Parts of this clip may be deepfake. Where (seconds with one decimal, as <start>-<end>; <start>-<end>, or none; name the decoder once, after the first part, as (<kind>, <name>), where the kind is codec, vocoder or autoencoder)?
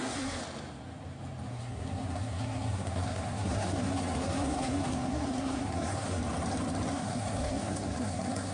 0.0-0.4 (codec, SNAC); 1.5-6.2; 6.9-8.5